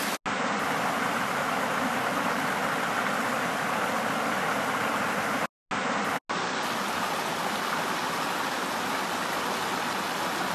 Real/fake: real